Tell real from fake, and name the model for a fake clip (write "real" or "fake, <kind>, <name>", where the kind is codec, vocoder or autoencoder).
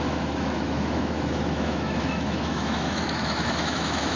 fake, autoencoder, DAC-VAE